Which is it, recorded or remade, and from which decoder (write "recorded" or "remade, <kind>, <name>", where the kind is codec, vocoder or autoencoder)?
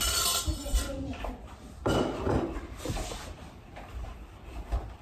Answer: remade, vocoder, BigVGAN v2